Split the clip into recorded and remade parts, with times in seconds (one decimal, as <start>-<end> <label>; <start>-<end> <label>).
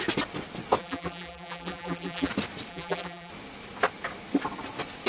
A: 0.0-0.8 recorded; 0.8-2.3 remade; 2.3-2.7 recorded; 2.7-3.3 remade; 3.3-5.1 recorded